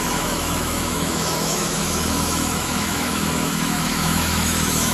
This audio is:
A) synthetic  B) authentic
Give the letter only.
A